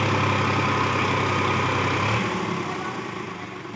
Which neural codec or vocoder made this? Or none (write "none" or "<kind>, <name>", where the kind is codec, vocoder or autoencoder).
none